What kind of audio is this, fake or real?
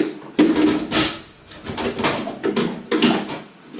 real